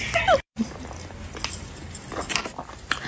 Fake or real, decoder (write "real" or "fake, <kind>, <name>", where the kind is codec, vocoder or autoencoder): real